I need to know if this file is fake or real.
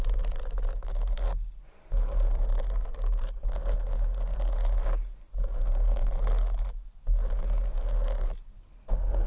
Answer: real